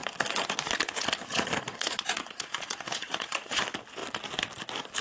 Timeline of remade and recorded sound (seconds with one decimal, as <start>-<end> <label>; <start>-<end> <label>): 0.0-1.3 recorded; 1.3-3.6 remade; 3.6-5.0 recorded